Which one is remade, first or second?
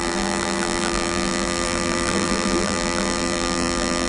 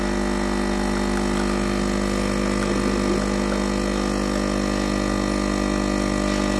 first